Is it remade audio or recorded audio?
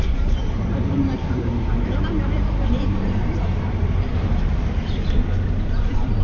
remade